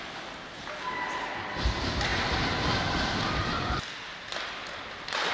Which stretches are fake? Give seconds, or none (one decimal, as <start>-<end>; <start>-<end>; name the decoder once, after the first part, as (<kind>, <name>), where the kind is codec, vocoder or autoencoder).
none